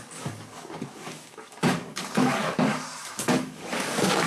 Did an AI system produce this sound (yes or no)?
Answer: yes